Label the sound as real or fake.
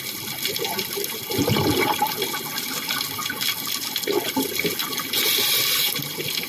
real